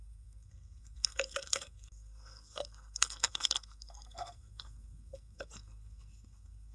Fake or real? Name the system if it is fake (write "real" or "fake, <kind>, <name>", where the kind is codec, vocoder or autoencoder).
fake, codec, SNAC